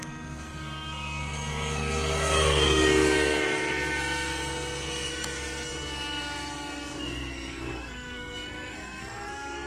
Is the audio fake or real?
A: fake